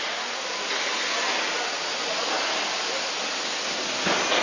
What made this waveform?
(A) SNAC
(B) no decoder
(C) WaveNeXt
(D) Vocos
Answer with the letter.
B